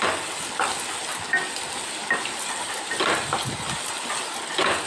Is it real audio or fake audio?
real